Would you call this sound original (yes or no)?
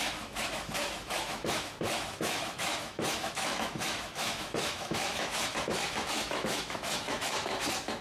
no